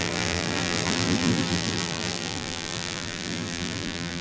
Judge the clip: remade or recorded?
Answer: remade